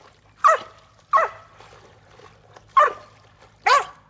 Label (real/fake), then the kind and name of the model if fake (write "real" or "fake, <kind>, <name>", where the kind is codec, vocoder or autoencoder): real